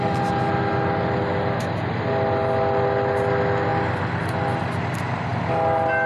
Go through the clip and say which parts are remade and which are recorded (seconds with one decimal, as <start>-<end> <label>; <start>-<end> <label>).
0.0-6.1 recorded